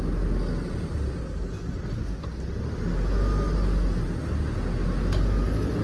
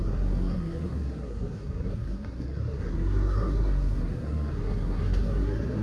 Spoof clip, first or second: second